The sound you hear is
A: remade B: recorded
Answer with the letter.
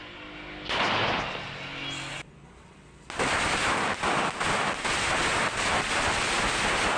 B